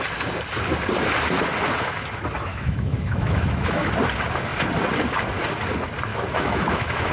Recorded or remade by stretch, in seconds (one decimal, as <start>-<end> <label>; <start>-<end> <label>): 0.0-2.5 recorded; 2.5-3.9 remade; 3.9-6.1 recorded; 6.1-7.1 remade